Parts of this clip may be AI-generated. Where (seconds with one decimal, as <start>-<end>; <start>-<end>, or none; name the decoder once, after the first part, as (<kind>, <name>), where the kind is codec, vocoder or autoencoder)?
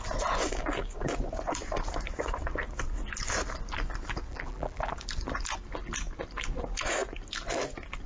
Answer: 4.3-4.9 (vocoder, BigVGAN v2)